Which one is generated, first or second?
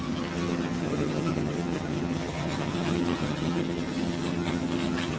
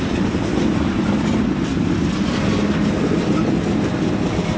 first